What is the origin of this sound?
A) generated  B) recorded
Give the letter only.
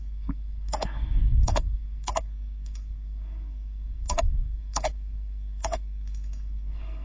A